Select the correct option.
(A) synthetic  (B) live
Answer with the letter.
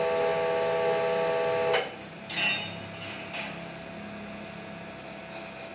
B